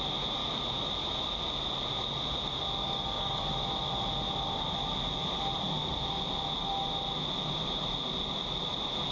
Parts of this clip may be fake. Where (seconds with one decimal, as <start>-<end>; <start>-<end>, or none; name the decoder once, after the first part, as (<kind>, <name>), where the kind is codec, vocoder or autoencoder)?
2.8-3.5 (codec, DAC)